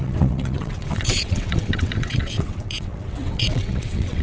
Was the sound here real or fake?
fake